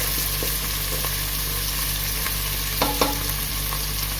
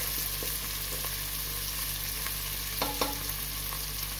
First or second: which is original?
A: second